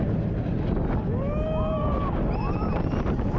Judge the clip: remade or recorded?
recorded